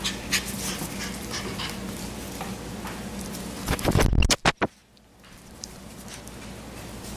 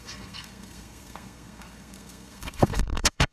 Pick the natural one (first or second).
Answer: first